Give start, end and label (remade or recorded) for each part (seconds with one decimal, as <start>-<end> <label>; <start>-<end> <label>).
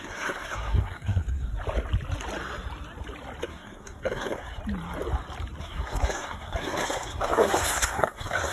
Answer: 0.0-1.5 remade; 1.5-3.4 recorded; 3.4-4.6 remade; 4.6-5.6 recorded; 5.6-8.5 remade